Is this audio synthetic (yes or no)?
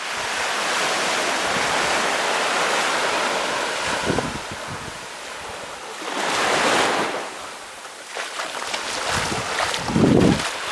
no